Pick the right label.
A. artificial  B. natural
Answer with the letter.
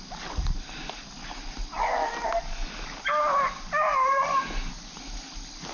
B